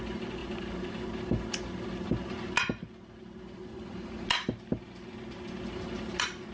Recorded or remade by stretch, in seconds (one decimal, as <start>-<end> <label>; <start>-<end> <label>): 0.0-6.5 recorded